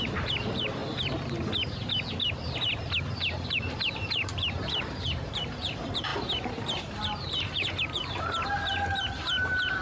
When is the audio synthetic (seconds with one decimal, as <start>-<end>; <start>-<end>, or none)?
0.0-0.8; 3.1-9.8